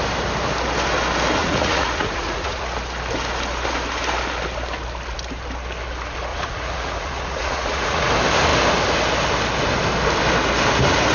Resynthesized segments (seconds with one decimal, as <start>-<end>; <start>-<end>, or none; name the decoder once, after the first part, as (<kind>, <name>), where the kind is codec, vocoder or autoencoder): 1.4-2.6 (vocoder, Vocos); 6.3-8.1